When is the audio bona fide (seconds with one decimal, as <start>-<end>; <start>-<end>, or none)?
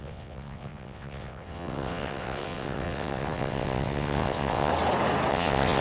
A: 4.7-5.3